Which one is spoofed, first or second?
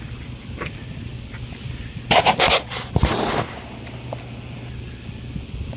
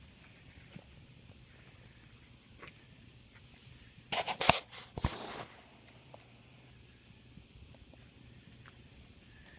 second